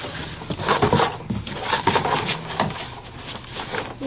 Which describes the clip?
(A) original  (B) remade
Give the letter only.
A